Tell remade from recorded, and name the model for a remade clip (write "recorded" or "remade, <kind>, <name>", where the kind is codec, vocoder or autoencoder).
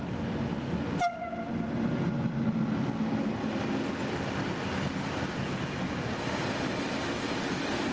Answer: recorded